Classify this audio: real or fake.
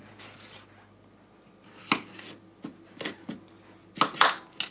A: real